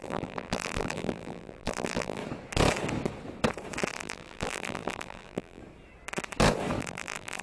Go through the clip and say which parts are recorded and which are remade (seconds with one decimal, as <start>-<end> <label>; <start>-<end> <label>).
0.0-2.2 remade; 2.2-3.9 recorded; 3.9-5.6 remade; 5.6-6.8 recorded; 6.8-7.4 remade